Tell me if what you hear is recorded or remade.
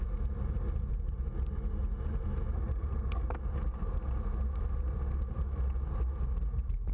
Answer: recorded